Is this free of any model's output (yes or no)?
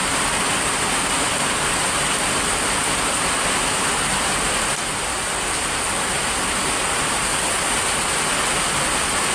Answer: yes